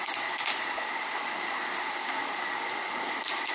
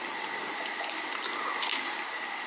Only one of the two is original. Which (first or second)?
first